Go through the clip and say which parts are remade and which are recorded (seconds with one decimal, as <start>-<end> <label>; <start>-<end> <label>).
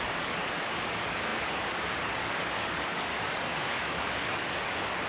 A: 0.0-5.1 remade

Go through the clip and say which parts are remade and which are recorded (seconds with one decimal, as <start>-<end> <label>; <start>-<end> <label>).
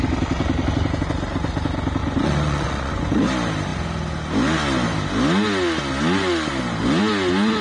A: 0.0-2.0 recorded; 2.0-3.1 remade; 3.1-7.6 recorded